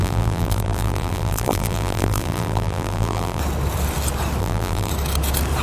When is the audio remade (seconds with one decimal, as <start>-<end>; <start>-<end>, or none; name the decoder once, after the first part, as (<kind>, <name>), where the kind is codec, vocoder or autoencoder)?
0.0-3.4 (vocoder, BigVGAN v2); 4.4-4.9